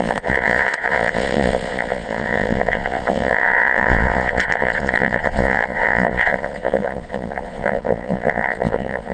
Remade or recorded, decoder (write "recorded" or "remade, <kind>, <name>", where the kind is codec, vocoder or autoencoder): remade, vocoder, Vocos